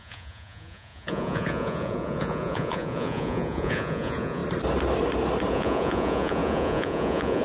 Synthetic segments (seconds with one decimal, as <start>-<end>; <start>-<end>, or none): 0.0-4.4; 5.5-7.4